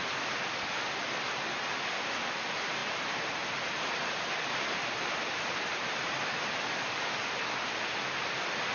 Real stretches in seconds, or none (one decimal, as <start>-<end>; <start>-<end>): 0.0-2.8; 7.0-8.7